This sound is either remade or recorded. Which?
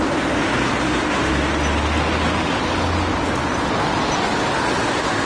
recorded